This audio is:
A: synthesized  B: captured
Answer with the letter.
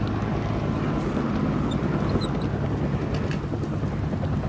B